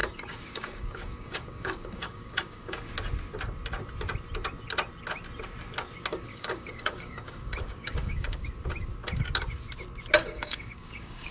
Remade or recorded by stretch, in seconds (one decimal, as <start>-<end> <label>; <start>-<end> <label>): 0.0-2.9 remade; 2.9-6.3 recorded; 6.3-8.5 remade; 8.5-10.2 recorded; 10.2-11.3 remade